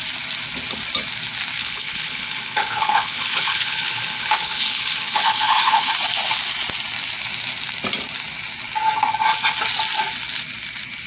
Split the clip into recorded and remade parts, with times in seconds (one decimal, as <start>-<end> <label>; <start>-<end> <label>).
0.0-1.6 recorded; 1.6-5.9 remade; 5.9-11.1 recorded